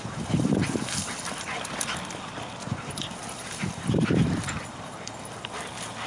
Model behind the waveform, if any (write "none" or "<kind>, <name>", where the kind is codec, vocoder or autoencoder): vocoder, BigVGAN v2